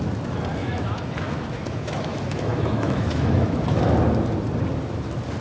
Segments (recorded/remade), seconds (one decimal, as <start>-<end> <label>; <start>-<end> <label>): 0.0-0.6 recorded; 0.6-3.8 remade; 3.8-5.4 recorded